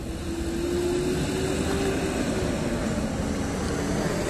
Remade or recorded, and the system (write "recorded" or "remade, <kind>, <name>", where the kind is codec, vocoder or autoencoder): recorded